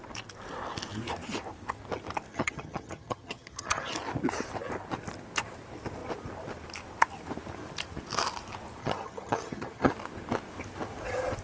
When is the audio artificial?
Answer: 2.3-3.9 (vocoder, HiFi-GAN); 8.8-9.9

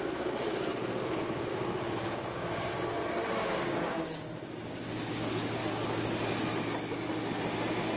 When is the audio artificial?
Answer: 1.5-2.7 (codec, DAC); 3.4-5.6

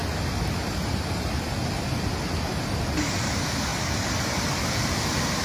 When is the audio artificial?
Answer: none

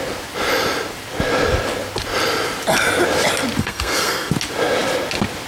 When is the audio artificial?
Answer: 3.6-4.3 (codec, SNAC)

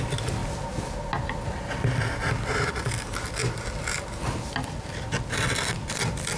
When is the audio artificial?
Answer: none

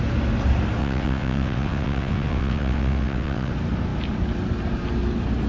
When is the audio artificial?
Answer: 0.8-3.5 (vocoder, WaveNeXt)

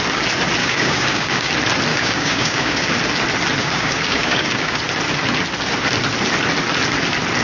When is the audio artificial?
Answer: 0.6-1.5 (codec, DAC); 1.9-2.9; 3.6-4.8